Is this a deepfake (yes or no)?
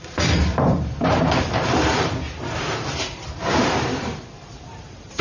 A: yes